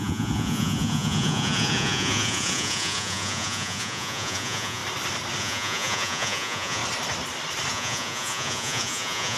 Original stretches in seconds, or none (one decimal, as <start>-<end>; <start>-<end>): 4.8-5.4; 6.8-7.7